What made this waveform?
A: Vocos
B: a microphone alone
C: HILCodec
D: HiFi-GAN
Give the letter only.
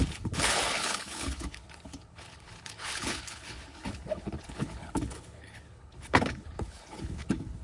C